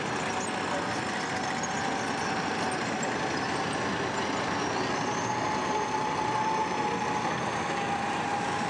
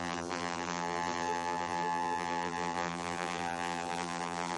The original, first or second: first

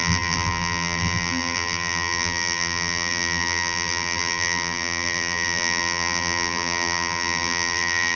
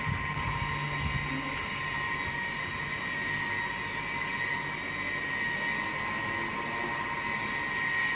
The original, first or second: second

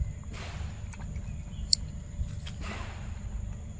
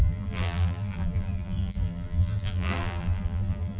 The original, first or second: first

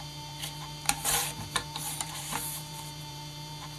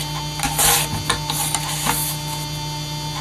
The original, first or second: second